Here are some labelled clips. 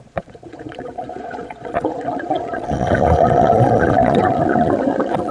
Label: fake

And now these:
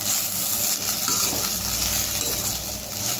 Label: real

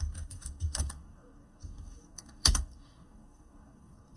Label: fake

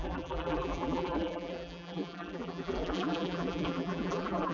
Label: fake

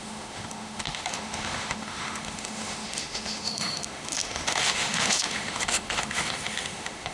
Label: fake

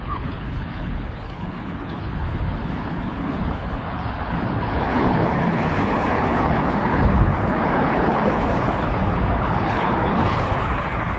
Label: fake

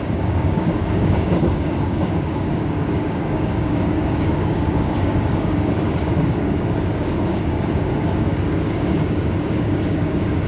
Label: fake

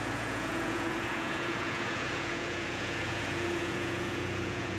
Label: fake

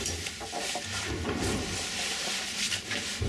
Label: real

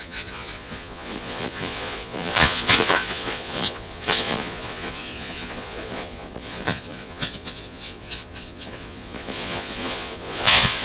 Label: fake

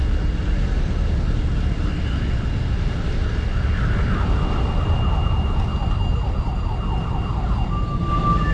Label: real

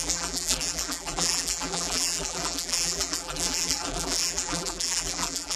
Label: fake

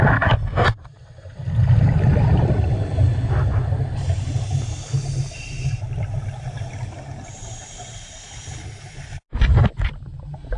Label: real